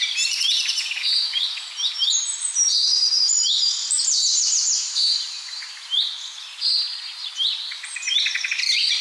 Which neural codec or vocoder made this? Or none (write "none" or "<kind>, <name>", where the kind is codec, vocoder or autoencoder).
vocoder, BigVGAN v2